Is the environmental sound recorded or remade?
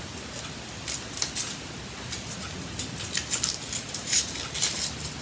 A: recorded